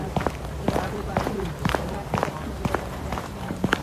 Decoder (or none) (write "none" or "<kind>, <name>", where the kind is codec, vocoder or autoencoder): vocoder, BigVGAN v2